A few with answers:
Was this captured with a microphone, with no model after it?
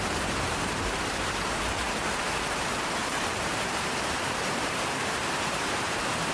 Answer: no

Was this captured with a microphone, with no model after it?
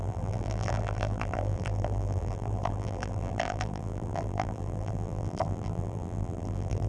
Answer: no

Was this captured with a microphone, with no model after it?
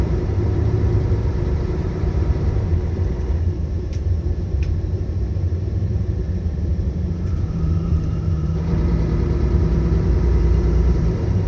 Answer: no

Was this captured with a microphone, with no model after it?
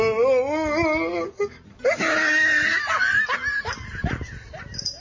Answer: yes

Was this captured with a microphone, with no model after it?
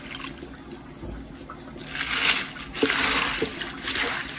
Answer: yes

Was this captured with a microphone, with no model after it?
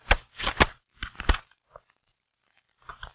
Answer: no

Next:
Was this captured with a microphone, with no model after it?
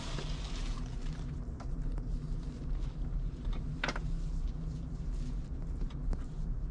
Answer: no